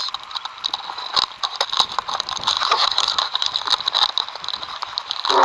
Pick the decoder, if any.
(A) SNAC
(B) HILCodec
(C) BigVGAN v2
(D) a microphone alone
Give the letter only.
D